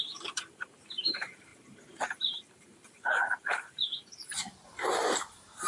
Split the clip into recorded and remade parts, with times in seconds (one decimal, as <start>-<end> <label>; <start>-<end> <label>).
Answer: 0.0-1.5 remade; 1.5-2.4 recorded; 2.4-5.7 remade